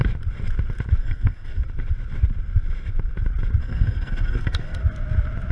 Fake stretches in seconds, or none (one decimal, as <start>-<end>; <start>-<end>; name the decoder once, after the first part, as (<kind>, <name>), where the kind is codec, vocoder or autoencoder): 1.0-1.6 (codec, SNAC); 3.6-4.8